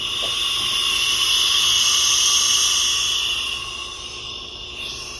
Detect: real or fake real